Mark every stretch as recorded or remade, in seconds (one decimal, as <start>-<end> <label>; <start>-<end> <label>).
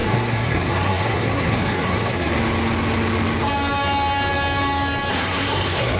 0.0-2.3 remade; 2.3-5.1 recorded; 5.1-6.0 remade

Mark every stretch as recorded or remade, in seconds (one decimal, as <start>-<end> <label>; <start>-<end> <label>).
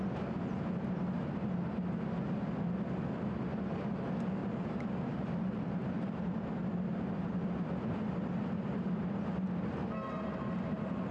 0.0-4.4 recorded; 4.4-7.3 remade; 7.3-11.1 recorded